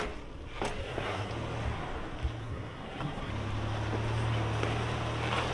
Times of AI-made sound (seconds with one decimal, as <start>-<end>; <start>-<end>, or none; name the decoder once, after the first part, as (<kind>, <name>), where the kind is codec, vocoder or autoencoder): 0.8-1.3 (codec, SNAC); 2.4-3.3